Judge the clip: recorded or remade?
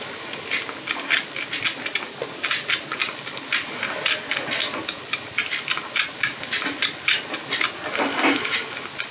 recorded